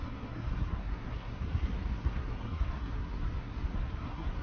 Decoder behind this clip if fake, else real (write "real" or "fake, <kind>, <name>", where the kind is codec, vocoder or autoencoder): fake, codec, SNAC